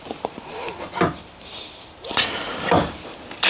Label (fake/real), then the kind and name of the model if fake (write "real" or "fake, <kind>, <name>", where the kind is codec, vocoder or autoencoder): real